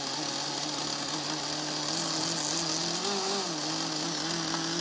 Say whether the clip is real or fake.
real